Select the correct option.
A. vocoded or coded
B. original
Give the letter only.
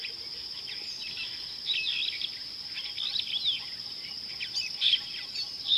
B